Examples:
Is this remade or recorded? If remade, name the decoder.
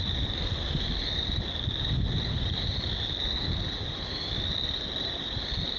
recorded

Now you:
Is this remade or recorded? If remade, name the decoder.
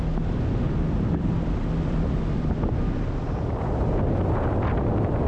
recorded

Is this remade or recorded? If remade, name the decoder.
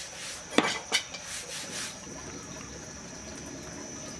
recorded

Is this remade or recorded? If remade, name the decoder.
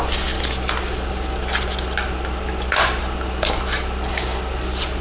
recorded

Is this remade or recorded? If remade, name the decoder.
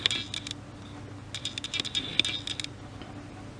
recorded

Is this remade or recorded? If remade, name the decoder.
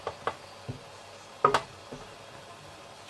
recorded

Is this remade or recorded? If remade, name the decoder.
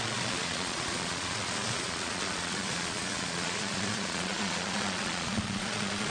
remade, vocoder, Vocos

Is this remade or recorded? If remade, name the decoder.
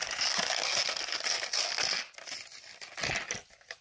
recorded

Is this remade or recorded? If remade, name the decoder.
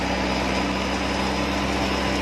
recorded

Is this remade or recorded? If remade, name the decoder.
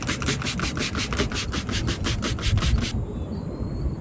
recorded